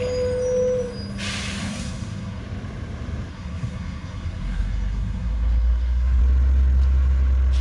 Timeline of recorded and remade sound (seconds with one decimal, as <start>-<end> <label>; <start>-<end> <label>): 0.0-1.6 recorded; 1.6-2.4 remade; 2.4-3.3 recorded; 3.3-6.2 remade; 6.2-7.6 recorded